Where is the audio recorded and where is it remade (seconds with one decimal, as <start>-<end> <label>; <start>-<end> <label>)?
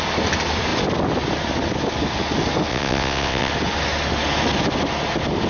0.0-2.7 recorded; 2.7-3.5 remade; 3.5-5.5 recorded